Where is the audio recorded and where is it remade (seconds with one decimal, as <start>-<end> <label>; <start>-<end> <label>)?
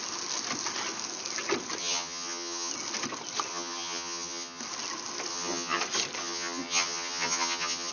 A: 0.0-1.8 recorded; 1.8-2.7 remade; 2.7-3.5 recorded; 3.5-4.6 remade; 4.6-5.3 recorded; 5.3-5.8 remade; 5.8-6.2 recorded; 6.2-7.9 remade